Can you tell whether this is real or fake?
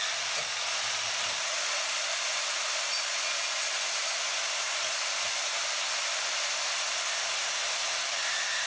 real